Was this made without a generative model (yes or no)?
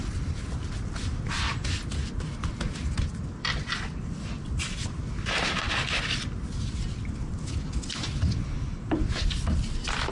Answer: yes